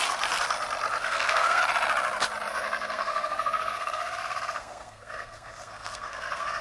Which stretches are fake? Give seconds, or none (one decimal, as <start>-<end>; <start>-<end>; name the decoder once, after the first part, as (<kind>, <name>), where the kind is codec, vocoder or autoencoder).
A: 1.0-1.6 (codec, SNAC); 2.5-6.6